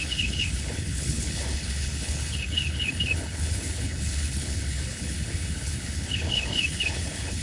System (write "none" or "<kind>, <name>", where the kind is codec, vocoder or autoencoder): codec, HILCodec